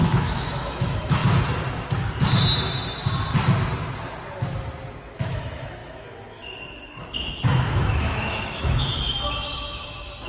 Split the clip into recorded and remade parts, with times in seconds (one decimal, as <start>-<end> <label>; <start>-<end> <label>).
0.0-1.2 remade; 1.2-5.0 recorded; 5.0-10.3 remade